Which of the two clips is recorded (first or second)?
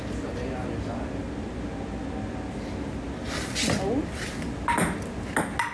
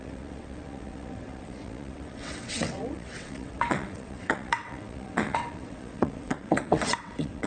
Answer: first